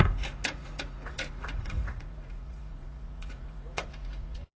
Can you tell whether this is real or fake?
fake